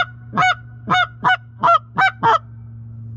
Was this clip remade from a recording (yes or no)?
no